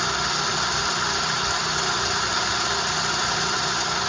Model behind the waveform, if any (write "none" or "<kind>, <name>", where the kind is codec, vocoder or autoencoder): none